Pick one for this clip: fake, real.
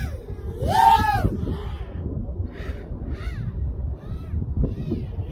real